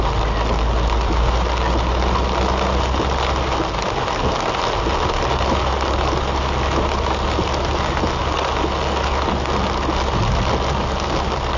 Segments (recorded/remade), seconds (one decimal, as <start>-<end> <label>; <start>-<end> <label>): 0.0-11.6 recorded